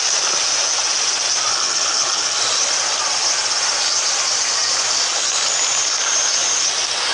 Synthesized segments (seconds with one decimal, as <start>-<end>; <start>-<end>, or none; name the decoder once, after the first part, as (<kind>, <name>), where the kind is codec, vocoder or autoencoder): 1.5-2.4 (codec, HILCodec)